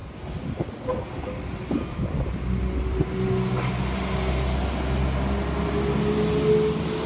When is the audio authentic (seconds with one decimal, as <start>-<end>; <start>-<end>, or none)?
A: 0.0-7.1